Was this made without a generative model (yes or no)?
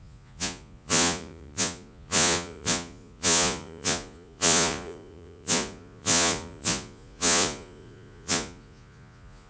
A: no